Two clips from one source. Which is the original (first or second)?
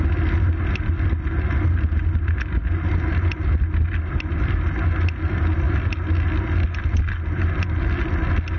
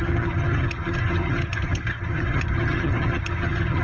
first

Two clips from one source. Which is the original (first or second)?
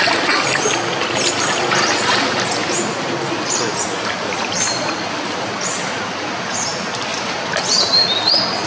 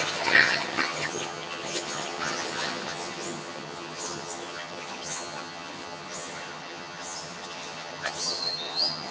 first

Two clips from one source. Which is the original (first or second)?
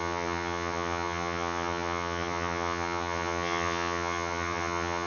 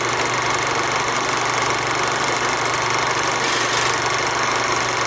second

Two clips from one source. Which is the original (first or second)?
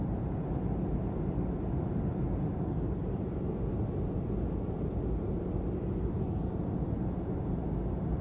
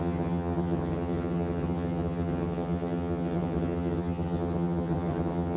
first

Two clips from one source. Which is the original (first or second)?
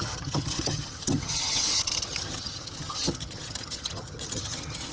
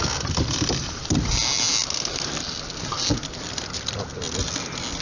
second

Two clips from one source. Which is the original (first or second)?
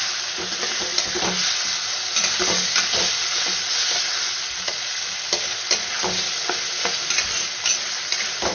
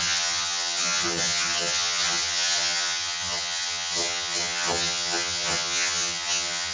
first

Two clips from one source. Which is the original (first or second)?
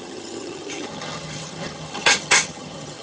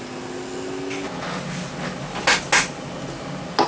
second